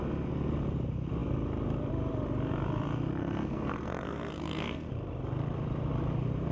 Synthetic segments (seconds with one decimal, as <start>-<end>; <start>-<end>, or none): 3.2-4.9